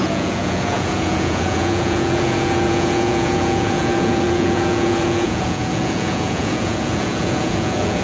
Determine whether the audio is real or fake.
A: fake